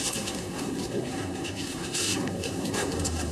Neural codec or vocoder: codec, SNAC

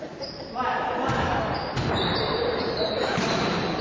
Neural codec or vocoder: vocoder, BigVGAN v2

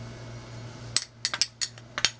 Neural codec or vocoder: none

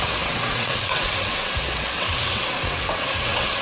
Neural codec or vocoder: vocoder, WaveNeXt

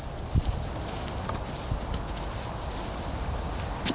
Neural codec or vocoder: none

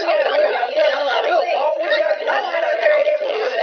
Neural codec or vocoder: vocoder, HiFi-GAN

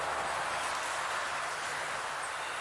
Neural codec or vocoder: none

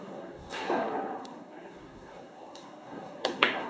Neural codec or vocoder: codec, SNAC